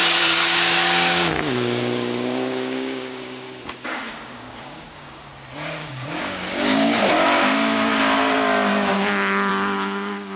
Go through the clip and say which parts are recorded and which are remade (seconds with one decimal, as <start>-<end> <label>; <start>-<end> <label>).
0.0-5.3 remade; 5.3-5.8 recorded; 5.8-8.0 remade; 8.0-9.5 recorded; 9.5-10.4 remade